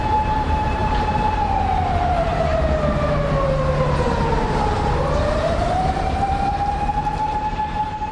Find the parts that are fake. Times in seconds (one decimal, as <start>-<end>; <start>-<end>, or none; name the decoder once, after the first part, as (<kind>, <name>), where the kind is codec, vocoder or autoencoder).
0.0-2.3 (vocoder, BigVGAN v2); 5.3-8.1